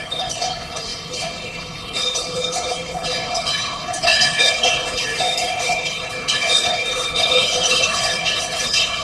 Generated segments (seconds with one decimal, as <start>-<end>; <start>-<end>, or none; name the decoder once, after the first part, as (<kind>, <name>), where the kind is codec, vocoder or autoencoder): 0.0-9.0 (codec, HILCodec)